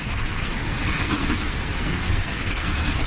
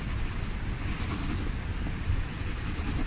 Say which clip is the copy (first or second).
first